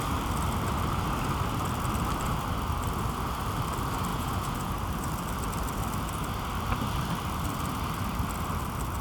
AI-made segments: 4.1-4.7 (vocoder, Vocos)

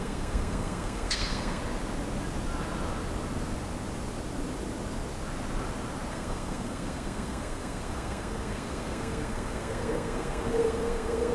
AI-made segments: 0.0-1.6 (codec, SNAC); 6.1-11.3